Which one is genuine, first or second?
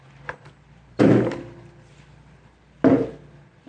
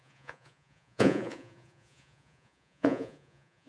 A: first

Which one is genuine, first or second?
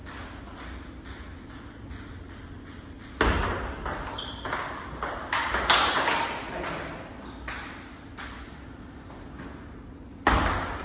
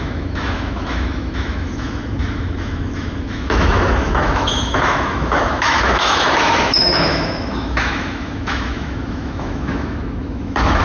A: first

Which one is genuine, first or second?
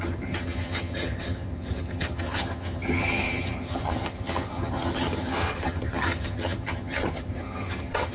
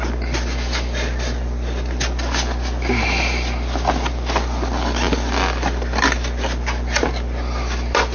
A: second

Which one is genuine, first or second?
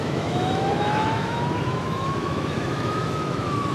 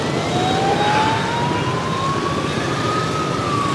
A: second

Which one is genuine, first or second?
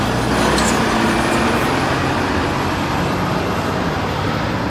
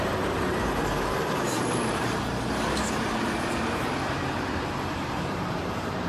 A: first